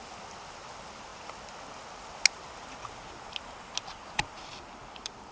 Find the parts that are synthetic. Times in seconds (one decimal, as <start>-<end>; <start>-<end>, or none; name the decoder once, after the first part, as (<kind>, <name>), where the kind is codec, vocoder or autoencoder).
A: none